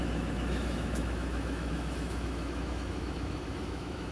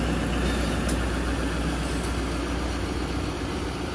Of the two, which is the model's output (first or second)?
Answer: first